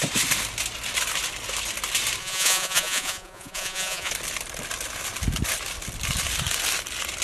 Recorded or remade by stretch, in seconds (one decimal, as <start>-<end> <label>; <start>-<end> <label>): 0.0-2.2 recorded; 2.2-4.1 remade; 4.1-7.2 recorded